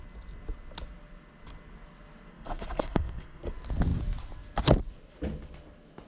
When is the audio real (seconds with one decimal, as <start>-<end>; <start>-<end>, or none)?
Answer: 0.0-2.3; 3.5-6.1